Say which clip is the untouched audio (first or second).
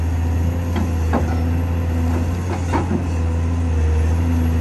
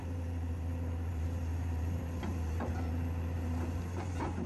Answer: first